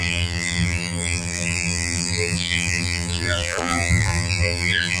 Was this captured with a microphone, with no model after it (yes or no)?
no